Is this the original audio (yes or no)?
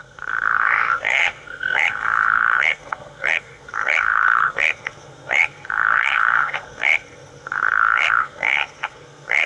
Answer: no